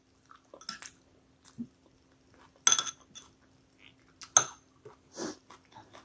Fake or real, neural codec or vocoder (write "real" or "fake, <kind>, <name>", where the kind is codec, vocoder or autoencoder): real